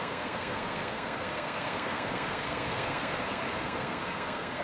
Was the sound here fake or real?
fake